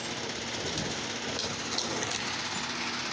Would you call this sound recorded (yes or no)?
yes